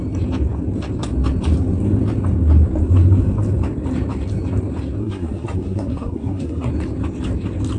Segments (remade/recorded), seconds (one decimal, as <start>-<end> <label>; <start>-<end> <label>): 0.0-5.0 recorded; 5.0-6.7 remade; 6.7-7.8 recorded